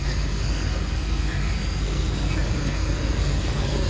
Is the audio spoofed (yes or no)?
yes